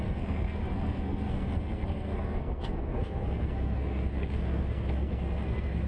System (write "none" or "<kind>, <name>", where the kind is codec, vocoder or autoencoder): codec, SNAC